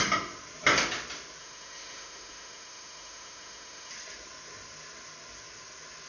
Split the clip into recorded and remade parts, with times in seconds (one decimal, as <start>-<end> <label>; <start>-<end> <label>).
0.0-1.4 recorded; 1.4-3.9 remade; 3.9-6.1 recorded